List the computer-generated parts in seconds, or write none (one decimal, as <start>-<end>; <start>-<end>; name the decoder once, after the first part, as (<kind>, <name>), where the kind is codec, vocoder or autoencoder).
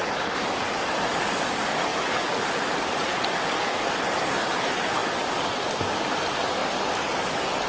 none